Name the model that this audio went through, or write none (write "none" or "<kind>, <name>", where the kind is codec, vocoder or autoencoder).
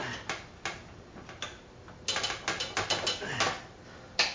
none